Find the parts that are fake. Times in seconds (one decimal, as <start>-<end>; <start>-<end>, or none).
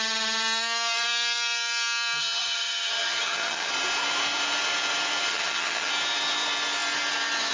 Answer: 2.2-3.7; 5.3-5.9